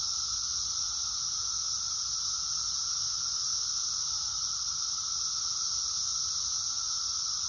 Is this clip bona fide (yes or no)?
yes